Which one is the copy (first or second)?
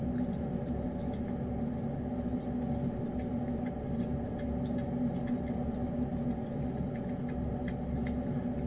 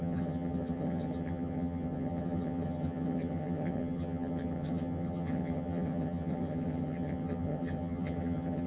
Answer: second